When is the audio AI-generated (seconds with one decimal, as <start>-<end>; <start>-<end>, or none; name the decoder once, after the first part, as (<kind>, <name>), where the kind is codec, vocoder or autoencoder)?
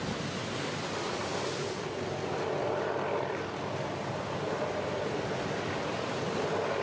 none